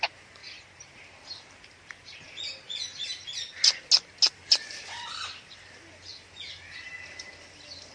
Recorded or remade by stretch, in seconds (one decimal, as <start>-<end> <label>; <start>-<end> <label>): 0.0-7.9 recorded